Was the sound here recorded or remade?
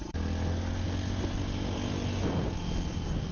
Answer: recorded